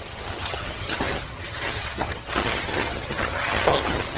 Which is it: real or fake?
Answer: fake